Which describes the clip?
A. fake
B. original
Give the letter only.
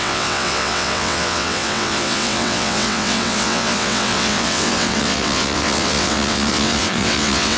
A